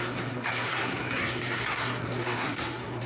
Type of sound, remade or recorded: remade